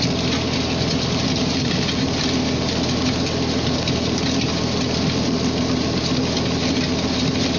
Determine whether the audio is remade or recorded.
recorded